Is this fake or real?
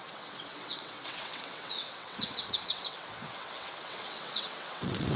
fake